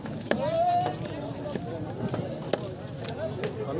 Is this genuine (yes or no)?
yes